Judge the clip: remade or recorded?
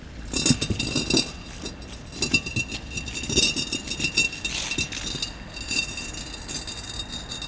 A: recorded